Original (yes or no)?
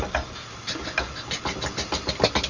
yes